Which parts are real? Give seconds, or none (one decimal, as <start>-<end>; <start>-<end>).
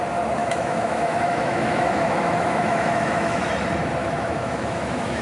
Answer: 0.0-0.4; 3.5-4.0